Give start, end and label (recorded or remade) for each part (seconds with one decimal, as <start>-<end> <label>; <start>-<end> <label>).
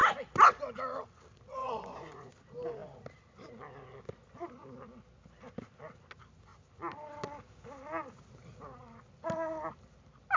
0.0-1.6 recorded; 1.6-2.3 remade; 2.3-10.4 recorded